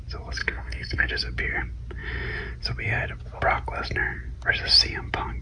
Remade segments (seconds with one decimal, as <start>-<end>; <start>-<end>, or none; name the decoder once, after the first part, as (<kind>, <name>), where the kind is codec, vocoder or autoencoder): 0.4-1.1 (codec, SNAC)